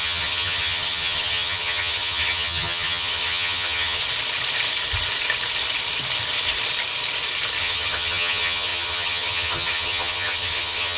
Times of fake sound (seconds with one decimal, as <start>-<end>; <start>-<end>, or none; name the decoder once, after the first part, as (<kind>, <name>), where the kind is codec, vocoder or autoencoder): 0.0-4.0 (vocoder, HiFi-GAN); 7.6-11.0